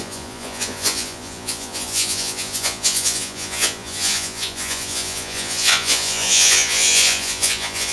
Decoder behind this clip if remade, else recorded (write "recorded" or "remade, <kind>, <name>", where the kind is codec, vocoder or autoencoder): remade, vocoder, Vocos